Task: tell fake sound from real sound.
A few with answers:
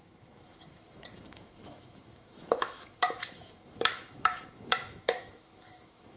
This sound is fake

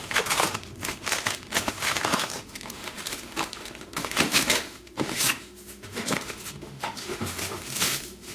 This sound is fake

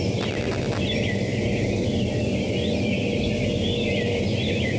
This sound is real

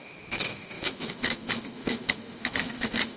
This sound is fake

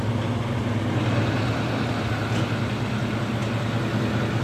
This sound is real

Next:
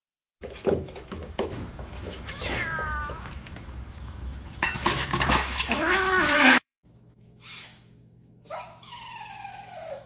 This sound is fake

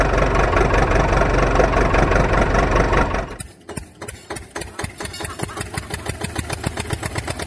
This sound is real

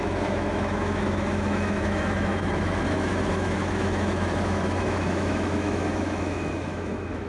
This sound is fake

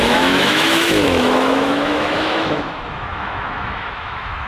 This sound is fake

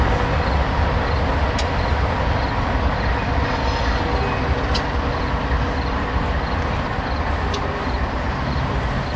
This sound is real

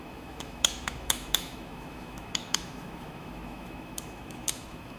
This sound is fake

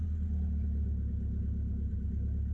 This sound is real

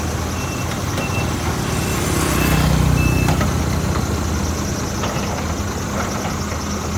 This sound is real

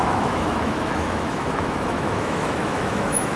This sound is fake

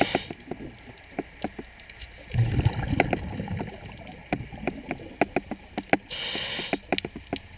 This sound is real